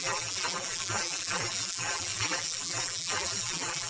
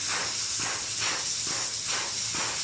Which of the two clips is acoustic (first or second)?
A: second